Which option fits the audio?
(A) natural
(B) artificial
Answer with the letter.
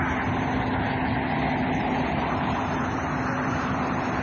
A